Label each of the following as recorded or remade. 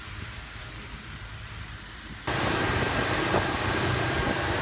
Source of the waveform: remade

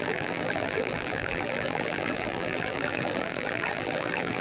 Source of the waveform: remade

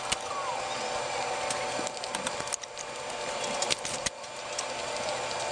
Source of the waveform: recorded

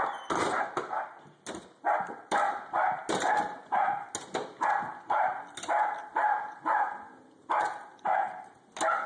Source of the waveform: recorded